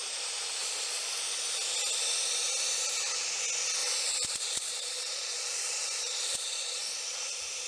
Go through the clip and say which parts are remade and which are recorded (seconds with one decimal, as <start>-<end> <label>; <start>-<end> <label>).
0.0-0.6 recorded; 0.6-1.2 remade; 1.2-3.8 recorded; 3.8-7.0 remade; 7.0-7.7 recorded